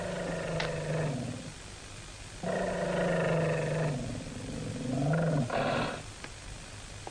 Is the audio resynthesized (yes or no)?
no